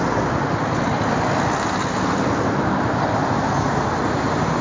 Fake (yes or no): no